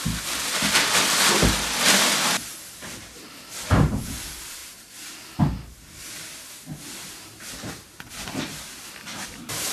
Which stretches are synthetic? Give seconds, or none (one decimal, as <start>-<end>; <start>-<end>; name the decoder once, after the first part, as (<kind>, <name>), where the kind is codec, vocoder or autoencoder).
0.0-4.6 (vocoder, BigVGAN v2); 8.9-9.7